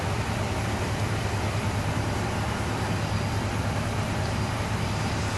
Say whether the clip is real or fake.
real